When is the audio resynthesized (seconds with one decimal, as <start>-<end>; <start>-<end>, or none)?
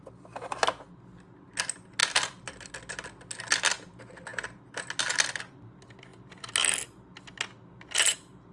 2.0-2.7